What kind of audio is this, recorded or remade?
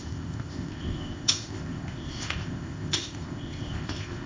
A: remade